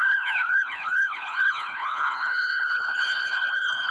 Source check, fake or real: fake